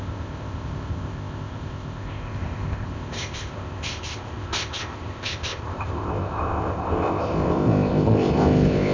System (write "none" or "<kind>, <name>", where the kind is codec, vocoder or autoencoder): codec, ZipCodec